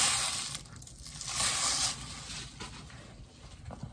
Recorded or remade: recorded